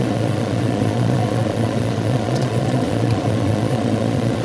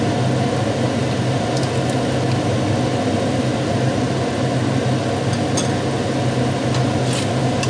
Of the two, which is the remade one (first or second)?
first